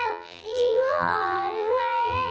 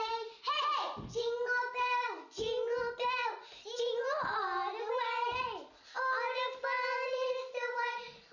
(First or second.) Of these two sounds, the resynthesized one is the first